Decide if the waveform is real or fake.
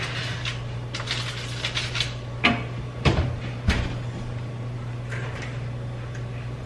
real